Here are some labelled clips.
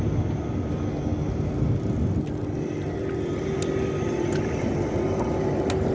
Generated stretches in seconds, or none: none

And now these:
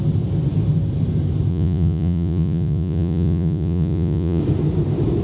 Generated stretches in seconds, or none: 1.5-4.4 (vocoder, Vocos)

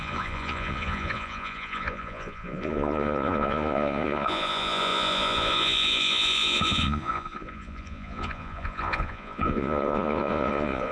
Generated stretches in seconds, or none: 0.0-10.9 (vocoder, Vocos)